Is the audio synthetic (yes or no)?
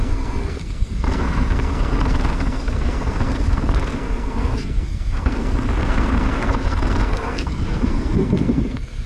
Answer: yes